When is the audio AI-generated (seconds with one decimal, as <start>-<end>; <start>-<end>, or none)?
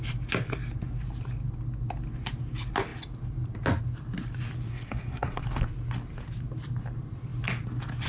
4.7-5.4